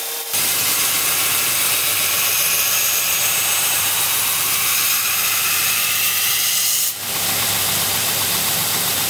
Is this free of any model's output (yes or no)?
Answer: no